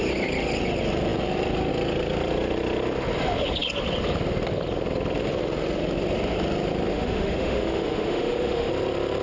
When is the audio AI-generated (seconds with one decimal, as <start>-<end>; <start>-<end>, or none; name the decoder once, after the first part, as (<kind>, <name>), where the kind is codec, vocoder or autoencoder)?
6.9-8.7 (autoencoder, DAC-VAE)